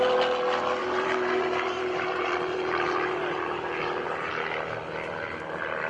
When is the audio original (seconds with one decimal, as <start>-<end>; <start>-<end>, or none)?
0.0-0.8; 4.3-5.9